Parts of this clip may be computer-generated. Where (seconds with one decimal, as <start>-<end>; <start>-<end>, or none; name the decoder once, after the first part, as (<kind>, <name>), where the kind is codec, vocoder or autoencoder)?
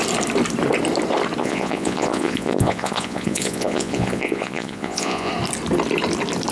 1.4-5.3 (vocoder, Vocos)